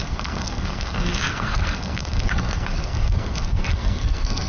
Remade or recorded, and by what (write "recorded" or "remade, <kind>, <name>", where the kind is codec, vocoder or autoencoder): remade, codec, SNAC